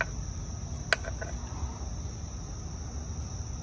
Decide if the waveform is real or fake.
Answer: real